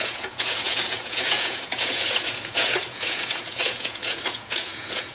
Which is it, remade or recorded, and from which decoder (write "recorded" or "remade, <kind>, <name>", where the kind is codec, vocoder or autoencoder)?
remade, vocoder, Vocos